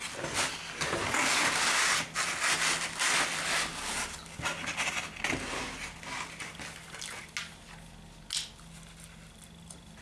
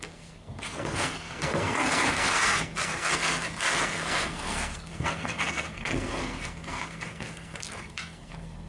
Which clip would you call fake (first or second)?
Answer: second